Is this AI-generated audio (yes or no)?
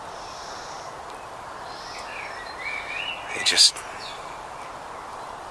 no